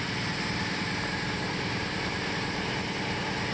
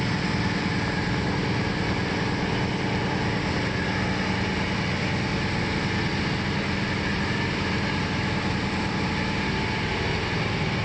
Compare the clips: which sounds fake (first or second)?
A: first